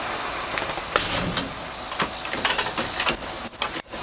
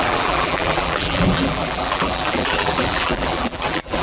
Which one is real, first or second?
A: first